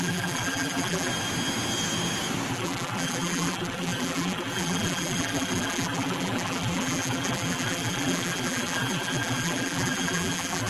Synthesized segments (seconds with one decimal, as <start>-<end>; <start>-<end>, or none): 0.0-1.1; 2.5-10.7